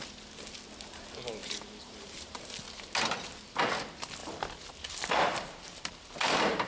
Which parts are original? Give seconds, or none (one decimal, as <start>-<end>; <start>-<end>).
0.0-1.4; 2.4-4.2